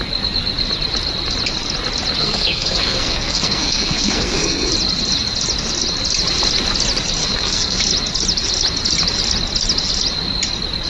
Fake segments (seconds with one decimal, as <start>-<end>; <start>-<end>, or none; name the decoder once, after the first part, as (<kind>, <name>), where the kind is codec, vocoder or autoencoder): 2.2-4.7 (codec, SNAC); 7.2-7.8